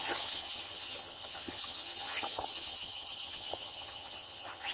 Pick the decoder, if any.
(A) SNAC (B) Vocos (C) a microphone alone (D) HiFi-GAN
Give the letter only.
D